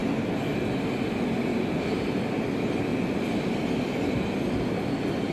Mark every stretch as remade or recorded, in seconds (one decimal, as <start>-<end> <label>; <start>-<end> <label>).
0.0-1.5 recorded; 1.5-2.0 remade; 2.0-5.3 recorded